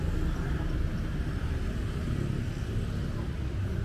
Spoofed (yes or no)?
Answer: no